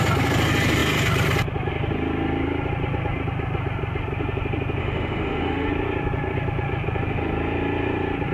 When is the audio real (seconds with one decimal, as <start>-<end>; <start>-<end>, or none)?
0.0-4.8; 5.7-8.3